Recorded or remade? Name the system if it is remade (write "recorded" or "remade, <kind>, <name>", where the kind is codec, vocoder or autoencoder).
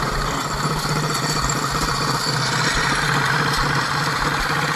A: recorded